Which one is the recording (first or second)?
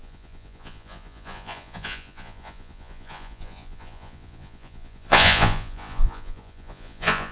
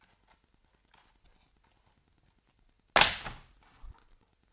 second